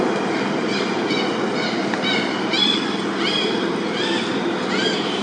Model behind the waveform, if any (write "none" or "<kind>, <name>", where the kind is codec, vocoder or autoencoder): none